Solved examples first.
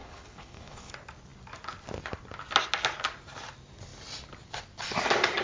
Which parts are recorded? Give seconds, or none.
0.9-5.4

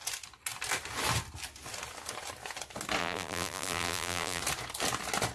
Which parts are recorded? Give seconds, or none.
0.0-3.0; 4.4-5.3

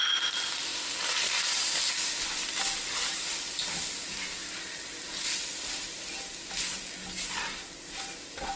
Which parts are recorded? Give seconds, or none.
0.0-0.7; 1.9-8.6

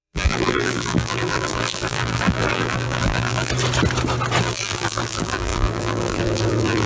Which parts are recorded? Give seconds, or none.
3.5-4.4

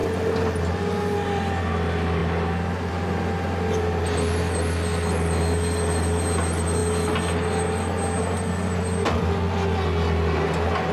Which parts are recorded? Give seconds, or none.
0.0-10.9

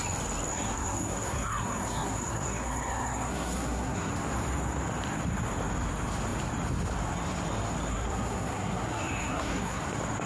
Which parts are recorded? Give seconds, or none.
0.0-0.5; 4.1-7.9; 9.8-10.3

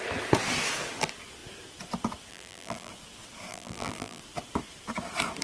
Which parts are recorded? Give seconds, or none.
0.0-2.3; 2.9-3.5; 4.2-5.4

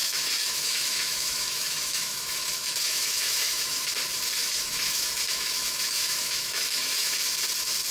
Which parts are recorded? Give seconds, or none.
3.9-4.4; 7.2-7.9